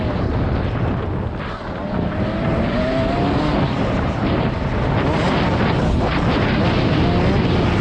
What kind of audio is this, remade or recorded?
recorded